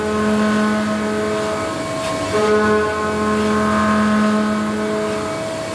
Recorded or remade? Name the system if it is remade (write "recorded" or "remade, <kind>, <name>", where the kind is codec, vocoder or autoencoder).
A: recorded